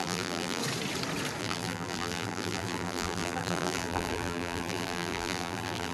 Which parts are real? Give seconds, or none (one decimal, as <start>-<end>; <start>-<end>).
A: 0.6-1.4